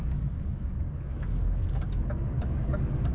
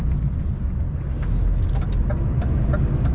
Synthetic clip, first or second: first